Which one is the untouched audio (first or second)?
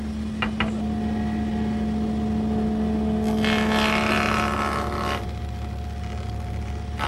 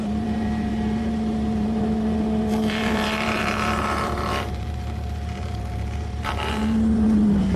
first